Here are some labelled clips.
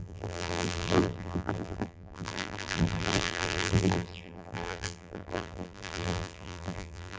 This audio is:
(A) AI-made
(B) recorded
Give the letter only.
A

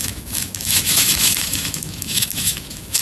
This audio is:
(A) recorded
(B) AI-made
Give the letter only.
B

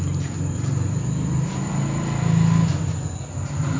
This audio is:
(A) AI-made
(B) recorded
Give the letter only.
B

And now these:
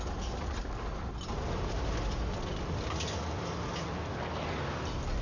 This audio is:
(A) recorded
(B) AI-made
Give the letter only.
A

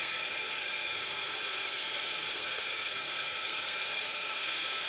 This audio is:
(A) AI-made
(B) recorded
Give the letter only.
A